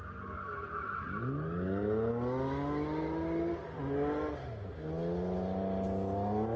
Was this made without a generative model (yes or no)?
yes